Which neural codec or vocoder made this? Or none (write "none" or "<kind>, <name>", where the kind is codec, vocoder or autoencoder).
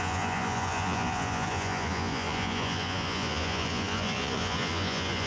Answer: vocoder, Vocos